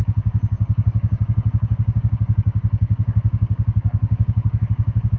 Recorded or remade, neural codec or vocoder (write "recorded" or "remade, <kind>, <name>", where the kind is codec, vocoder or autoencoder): remade, codec, DAC